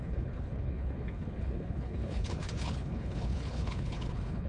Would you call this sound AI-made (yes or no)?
yes